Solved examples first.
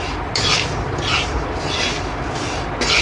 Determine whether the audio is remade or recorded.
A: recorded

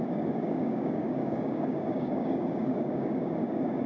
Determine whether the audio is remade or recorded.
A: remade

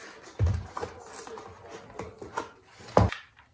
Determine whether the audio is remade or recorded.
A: recorded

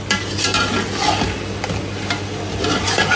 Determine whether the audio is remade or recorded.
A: recorded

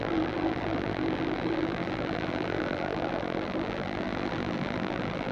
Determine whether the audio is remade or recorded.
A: remade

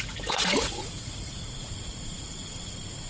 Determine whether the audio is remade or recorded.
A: remade